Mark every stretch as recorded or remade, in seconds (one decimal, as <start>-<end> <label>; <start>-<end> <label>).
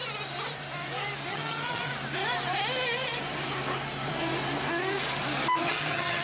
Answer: 0.0-1.3 recorded; 1.3-1.9 remade; 1.9-5.6 recorded; 5.6-6.2 remade